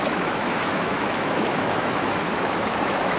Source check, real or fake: fake